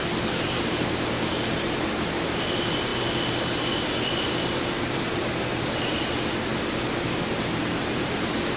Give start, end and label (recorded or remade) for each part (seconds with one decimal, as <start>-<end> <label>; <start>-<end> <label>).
0.0-2.9 remade; 2.9-4.1 recorded; 4.1-5.2 remade; 5.2-6.1 recorded; 6.1-6.5 remade; 6.5-7.3 recorded; 7.3-8.6 remade